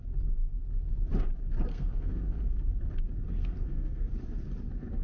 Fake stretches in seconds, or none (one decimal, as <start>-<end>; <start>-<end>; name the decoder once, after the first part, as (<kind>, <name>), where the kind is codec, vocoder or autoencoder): 1.7-2.4 (codec, SNAC); 3.2-4.1

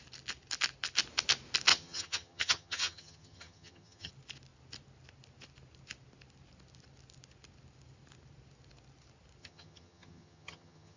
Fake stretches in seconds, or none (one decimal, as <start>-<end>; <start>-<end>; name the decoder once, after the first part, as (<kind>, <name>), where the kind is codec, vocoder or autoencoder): 1.7-4.1 (vocoder, HiFi-GAN); 9.4-11.0

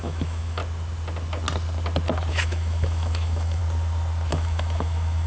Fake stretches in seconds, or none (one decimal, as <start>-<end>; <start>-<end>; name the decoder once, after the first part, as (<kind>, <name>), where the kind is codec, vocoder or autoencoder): 0.0-0.6 (autoencoder, DAC-VAE); 2.3-3.6; 4.3-5.3

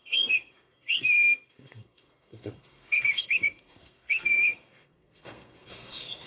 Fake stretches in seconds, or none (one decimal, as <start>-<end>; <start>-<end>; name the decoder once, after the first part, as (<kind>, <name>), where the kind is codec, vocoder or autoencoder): 0.0-6.3 (codec, SNAC)

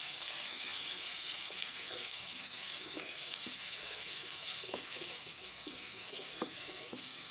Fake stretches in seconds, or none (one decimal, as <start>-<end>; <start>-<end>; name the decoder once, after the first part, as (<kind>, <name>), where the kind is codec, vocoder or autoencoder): 0.0-7.3 (codec, SNAC)

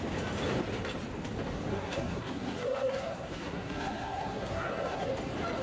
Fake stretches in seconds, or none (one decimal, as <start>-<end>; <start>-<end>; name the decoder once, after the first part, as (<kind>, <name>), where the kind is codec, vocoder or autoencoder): 1.7-5.1 (codec, SNAC)

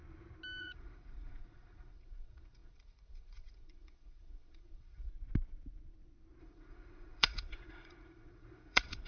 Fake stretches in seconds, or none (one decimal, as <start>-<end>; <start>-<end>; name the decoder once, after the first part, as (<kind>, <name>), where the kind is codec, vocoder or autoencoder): 0.6-5.1 (vocoder, Vocos); 6.4-9.1